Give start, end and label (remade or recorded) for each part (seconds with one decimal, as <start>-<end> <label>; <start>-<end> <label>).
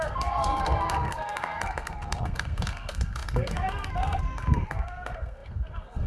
0.0-6.1 remade